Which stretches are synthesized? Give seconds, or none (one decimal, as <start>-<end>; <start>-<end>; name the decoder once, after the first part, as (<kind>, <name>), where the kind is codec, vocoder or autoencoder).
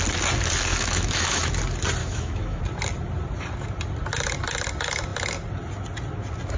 0.7-1.5 (autoencoder, DAC-VAE); 2.0-2.6